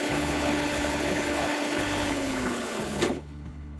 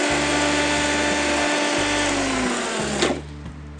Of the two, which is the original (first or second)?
second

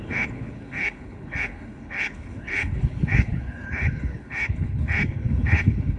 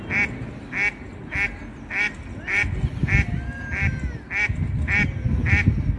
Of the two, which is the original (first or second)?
second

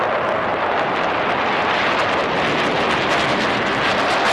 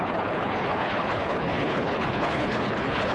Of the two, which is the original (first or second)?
first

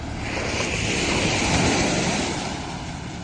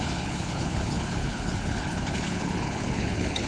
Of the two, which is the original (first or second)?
first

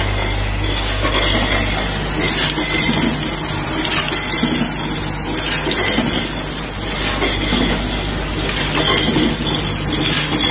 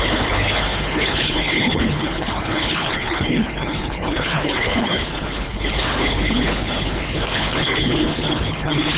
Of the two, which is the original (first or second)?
first